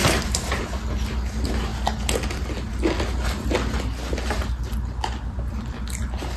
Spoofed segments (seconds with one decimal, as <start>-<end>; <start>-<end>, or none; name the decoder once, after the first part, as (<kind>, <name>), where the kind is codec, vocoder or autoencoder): 0.0-0.6 (vocoder, BigVGAN v2)